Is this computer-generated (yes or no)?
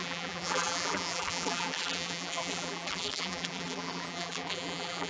yes